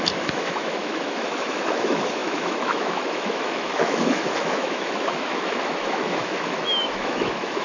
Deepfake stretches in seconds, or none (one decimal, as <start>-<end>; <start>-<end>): 0.0-7.6